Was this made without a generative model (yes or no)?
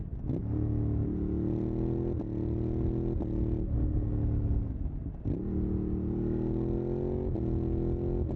yes